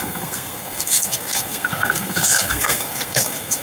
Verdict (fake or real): fake